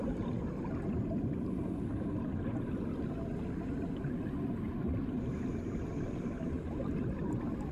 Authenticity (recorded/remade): recorded